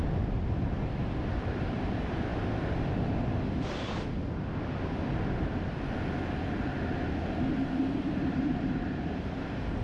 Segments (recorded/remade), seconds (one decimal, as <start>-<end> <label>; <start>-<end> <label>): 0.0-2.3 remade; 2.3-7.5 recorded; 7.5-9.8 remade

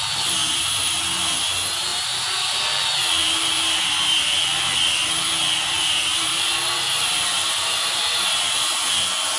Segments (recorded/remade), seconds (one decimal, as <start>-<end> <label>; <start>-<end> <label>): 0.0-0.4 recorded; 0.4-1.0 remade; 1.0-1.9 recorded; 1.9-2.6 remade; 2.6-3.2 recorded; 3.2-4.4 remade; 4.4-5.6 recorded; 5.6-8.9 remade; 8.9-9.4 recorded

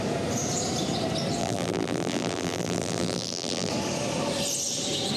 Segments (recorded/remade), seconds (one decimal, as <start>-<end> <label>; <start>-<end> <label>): 0.0-1.4 recorded; 1.4-3.7 remade; 3.7-5.2 recorded

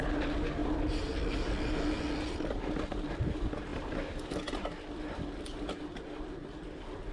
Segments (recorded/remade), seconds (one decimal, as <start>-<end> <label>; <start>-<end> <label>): 0.0-7.1 recorded

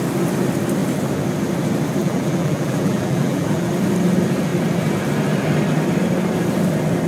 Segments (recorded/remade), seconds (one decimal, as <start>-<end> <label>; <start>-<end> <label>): 0.0-2.0 recorded; 2.0-3.7 remade; 3.7-7.1 recorded

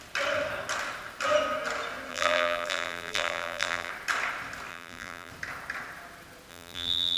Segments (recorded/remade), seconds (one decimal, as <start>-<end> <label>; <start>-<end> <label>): 0.0-2.1 recorded; 2.1-3.9 remade; 3.9-4.7 recorded; 4.7-5.3 remade; 5.3-6.5 recorded; 6.5-7.2 remade

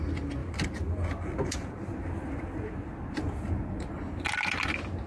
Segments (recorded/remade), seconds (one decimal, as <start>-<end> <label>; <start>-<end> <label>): 0.0-0.4 recorded; 0.4-3.2 remade; 3.2-5.1 recorded